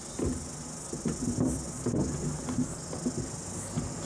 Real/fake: real